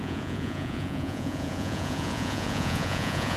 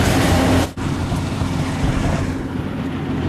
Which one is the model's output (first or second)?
first